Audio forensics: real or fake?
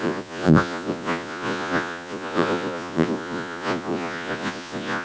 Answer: fake